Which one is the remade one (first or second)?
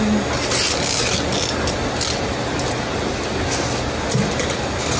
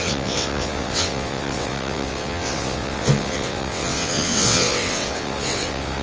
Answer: second